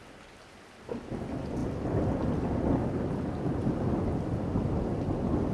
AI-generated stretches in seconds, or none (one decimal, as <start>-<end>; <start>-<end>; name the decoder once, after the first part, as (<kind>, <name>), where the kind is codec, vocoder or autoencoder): none